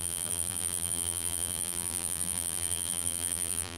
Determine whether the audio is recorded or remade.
remade